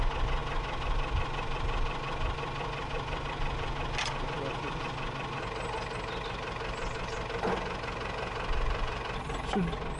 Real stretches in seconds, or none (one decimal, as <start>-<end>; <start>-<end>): 0.0-10.0

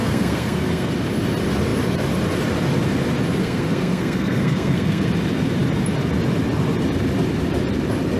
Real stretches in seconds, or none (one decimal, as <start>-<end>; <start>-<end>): 0.9-3.4; 5.1-8.2

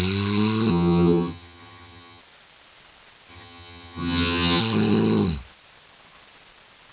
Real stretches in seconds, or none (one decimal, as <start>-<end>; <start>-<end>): 0.0-0.7; 2.2-3.3; 4.6-6.9

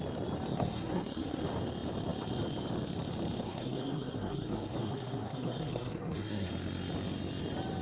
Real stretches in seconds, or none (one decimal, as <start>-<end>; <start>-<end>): 0.0-0.5; 1.4-3.4; 6.5-7.8

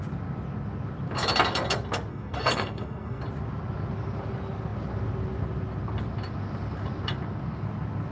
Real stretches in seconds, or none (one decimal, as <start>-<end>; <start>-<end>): 0.0-2.1; 3.2-8.1

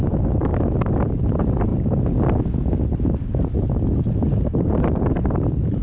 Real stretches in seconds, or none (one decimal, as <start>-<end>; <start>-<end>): 0.5-1.1; 1.7-4.0

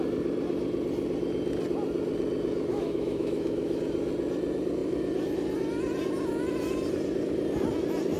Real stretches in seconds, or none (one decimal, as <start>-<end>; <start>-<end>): 0.0-2.7; 3.8-8.2

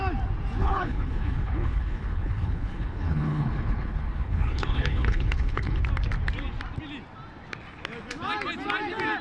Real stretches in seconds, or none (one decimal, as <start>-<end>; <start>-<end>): 0.0-0.6; 5.8-9.2